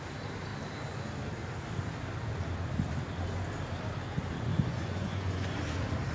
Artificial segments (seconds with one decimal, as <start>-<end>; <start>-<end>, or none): 4.5-5.6